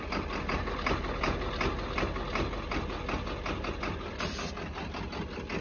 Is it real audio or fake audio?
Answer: real